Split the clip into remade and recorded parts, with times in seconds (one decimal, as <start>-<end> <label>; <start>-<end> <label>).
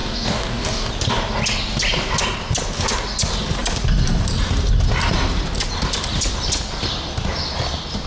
0.0-0.9 remade; 0.9-8.1 recorded